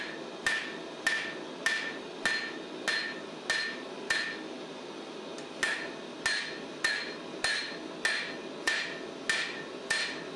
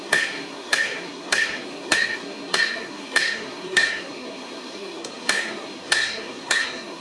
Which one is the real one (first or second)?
first